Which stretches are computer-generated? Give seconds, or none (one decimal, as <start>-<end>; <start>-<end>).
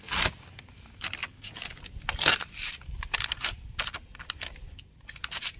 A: 1.2-1.8